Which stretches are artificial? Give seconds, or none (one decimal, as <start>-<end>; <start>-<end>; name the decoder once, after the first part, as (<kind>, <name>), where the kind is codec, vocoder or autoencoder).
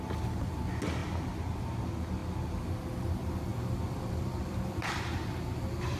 1.0-1.5 (vocoder, BigVGAN v2); 2.2-3.0; 3.5-5.5